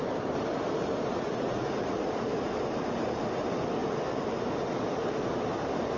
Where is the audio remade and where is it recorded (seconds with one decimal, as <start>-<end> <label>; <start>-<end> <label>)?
0.0-1.1 recorded; 1.1-2.3 remade; 2.3-6.0 recorded